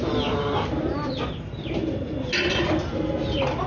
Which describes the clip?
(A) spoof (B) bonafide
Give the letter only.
B